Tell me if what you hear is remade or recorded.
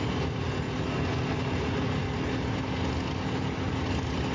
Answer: recorded